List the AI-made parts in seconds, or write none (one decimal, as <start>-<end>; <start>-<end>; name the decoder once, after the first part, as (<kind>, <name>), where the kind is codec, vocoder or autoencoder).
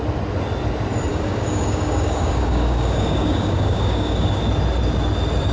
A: 1.1-4.4 (codec, DAC)